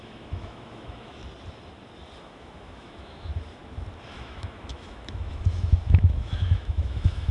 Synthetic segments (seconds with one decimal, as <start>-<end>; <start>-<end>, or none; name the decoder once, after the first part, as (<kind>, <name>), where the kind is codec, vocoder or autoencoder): 0.0-1.2 (autoencoder, DAC-VAE); 2.2-3.3; 4.1-7.3

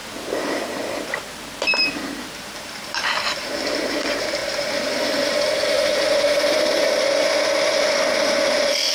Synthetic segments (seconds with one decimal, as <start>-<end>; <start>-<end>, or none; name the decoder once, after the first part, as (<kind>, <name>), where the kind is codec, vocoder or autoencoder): 1.7-8.9 (vocoder, BigVGAN v2)

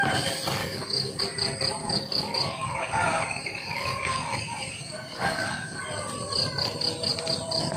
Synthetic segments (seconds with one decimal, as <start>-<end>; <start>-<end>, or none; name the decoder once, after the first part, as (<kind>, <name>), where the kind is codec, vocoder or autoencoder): 0.6-1.2 (codec, DAC); 1.8-5.8

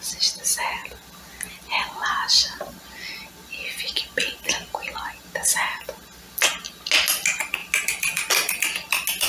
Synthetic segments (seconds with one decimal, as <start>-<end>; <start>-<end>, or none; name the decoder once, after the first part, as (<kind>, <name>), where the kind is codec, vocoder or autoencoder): none

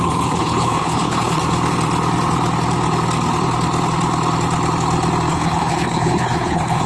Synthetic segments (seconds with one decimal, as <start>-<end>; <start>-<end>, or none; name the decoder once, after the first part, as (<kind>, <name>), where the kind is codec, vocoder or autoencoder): 0.0-1.4 (codec, HILCodec); 5.3-6.9

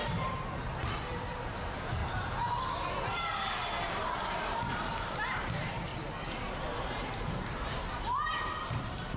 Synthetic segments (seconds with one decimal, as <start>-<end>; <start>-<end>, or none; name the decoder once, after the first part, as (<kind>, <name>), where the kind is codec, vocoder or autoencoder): 0.0-2.0 (vocoder, BigVGAN v2); 3.9-5.9; 7.3-9.2

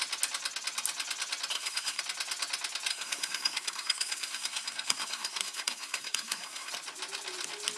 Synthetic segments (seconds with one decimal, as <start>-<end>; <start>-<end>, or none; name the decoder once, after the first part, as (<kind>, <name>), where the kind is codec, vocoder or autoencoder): 1.5-2.0 (codec, SNAC); 2.9-6.7

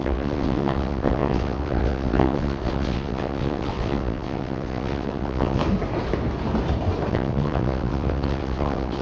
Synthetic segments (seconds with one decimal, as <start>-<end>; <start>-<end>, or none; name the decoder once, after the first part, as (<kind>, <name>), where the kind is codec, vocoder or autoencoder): 0.0-5.6 (vocoder, WaveNeXt); 7.1-9.0